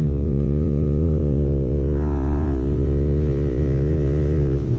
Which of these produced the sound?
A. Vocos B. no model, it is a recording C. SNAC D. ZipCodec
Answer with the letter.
A